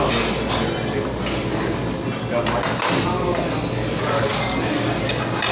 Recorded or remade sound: recorded